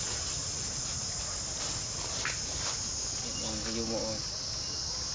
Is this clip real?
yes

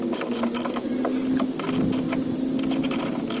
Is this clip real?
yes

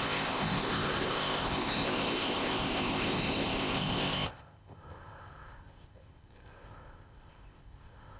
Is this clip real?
no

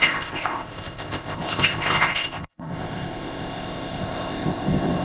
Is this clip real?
no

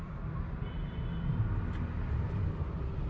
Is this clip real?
yes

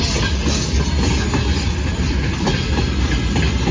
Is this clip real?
yes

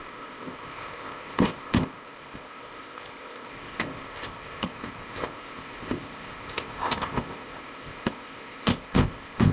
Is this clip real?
no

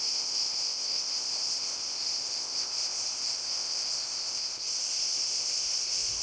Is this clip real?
no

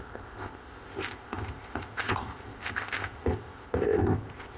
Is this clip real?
no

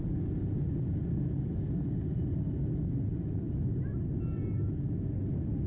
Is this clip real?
yes